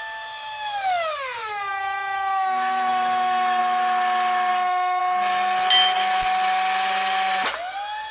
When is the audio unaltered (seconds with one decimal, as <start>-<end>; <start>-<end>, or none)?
3.6-4.5; 5.0-8.1